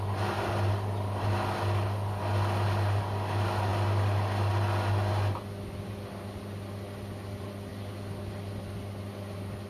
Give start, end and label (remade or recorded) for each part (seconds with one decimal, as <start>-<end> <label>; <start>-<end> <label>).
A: 0.0-9.7 recorded

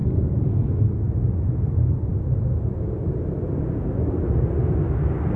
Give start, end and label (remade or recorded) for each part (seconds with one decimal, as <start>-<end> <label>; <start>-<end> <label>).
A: 0.0-5.4 recorded

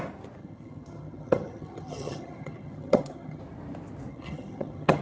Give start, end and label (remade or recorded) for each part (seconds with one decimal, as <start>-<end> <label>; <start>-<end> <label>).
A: 0.0-0.4 recorded; 0.4-3.4 remade; 3.4-4.1 recorded; 4.1-5.0 remade

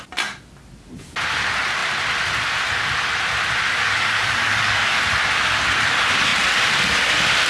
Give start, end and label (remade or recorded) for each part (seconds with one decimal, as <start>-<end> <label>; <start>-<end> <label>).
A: 0.0-3.7 recorded; 3.7-5.0 remade; 5.0-7.5 recorded

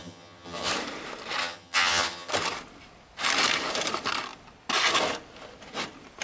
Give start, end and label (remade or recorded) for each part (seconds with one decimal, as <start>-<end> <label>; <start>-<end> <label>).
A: 0.0-0.7 remade; 0.7-1.4 recorded; 1.4-2.3 remade; 2.3-6.2 recorded